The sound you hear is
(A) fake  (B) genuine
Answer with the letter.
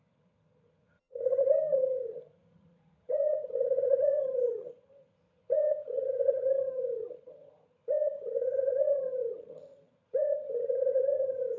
A